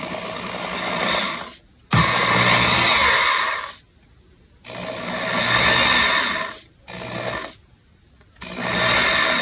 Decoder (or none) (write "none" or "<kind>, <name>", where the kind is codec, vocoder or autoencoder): none